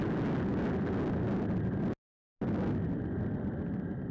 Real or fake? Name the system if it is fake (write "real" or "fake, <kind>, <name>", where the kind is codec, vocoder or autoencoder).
real